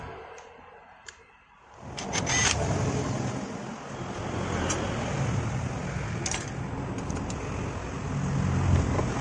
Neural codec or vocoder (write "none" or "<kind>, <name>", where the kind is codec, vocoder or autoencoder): none